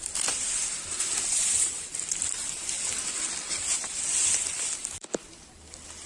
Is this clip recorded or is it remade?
recorded